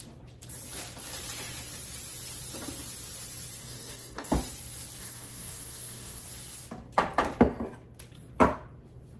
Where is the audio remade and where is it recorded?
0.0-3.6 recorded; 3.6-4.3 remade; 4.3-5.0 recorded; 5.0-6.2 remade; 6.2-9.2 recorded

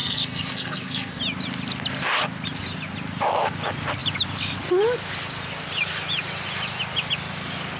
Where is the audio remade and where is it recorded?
0.0-1.2 remade; 1.2-7.8 recorded